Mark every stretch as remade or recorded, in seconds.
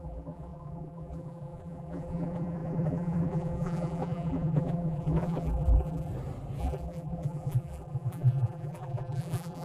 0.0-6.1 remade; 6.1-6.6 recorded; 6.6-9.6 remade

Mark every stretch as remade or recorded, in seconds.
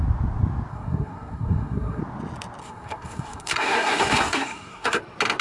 0.0-0.7 recorded; 0.7-2.0 remade; 2.0-2.6 recorded; 2.6-5.0 remade; 5.0-5.4 recorded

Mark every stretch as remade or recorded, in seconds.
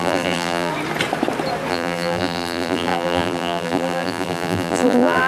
0.0-0.7 remade; 0.7-1.7 recorded; 1.7-5.3 remade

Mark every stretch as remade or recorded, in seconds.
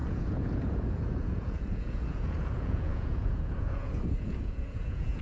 0.0-5.2 remade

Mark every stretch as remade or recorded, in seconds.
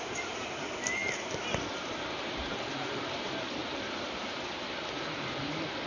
0.0-5.9 recorded